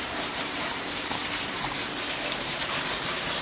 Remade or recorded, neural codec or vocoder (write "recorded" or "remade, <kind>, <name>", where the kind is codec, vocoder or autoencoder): remade, vocoder, BigVGAN v2